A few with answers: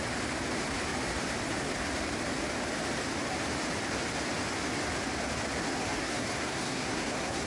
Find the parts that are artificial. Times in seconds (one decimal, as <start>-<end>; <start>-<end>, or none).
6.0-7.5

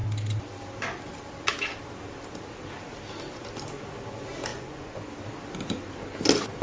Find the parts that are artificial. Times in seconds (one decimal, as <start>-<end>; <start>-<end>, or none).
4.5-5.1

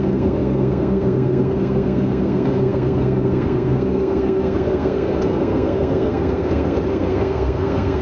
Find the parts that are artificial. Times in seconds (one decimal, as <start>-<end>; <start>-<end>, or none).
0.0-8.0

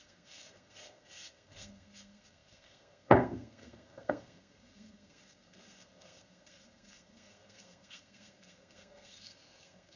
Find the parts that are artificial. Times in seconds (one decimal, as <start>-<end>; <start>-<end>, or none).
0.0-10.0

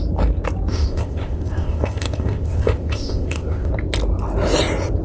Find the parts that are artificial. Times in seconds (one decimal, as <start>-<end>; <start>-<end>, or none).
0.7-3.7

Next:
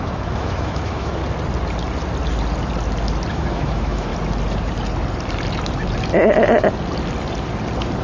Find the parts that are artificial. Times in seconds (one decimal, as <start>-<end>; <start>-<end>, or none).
0.0-1.2; 3.3-4.1